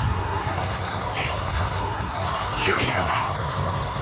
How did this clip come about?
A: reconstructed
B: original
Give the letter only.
A